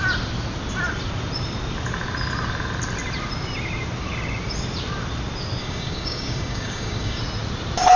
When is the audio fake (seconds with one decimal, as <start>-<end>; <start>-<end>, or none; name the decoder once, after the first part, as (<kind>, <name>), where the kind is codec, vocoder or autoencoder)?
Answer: 5.6-7.2 (codec, DAC)